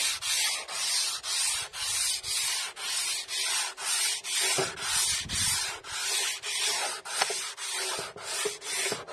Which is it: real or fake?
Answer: real